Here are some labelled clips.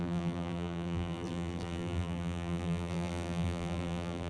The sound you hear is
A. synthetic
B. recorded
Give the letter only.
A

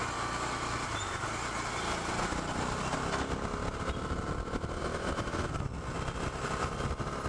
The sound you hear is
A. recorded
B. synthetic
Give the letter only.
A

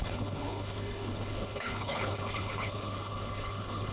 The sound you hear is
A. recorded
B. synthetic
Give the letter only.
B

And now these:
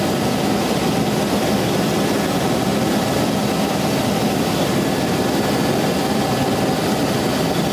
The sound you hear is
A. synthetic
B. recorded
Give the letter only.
B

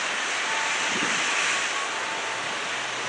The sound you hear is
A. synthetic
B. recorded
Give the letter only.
B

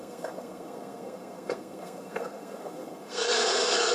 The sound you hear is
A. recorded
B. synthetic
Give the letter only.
B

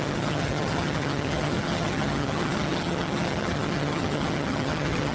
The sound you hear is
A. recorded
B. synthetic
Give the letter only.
B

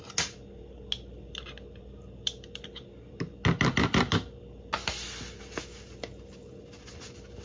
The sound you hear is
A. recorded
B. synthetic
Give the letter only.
A